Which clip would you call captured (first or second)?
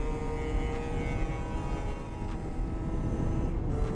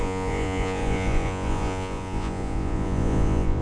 first